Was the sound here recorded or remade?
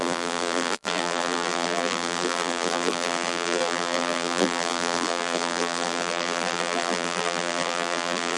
remade